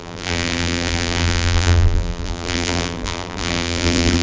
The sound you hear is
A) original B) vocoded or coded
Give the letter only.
B